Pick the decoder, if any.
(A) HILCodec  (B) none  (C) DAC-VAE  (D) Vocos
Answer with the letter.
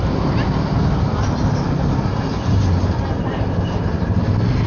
B